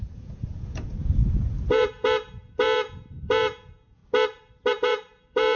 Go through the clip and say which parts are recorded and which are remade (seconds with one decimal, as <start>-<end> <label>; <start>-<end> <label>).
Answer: 0.0-1.0 remade; 1.0-1.7 recorded; 1.7-4.0 remade; 4.0-4.7 recorded; 4.7-5.6 remade